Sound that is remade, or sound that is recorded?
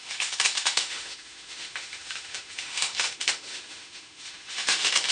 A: remade